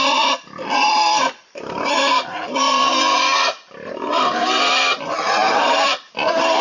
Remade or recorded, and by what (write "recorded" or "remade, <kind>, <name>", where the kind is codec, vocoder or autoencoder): remade, vocoder, BigVGAN v2